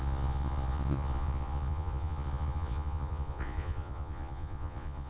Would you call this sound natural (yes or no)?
no